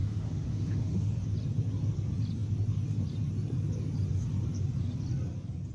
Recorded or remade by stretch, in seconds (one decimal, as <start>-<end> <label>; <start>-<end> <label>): 0.0-1.1 remade; 1.1-5.7 recorded